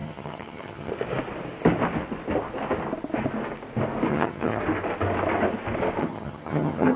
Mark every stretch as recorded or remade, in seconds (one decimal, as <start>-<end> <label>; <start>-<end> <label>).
0.0-0.9 remade; 0.9-4.1 recorded; 4.1-4.6 remade; 4.6-6.0 recorded; 6.0-7.0 remade